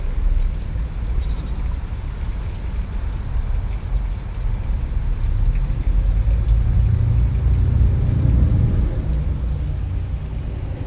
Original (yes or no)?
yes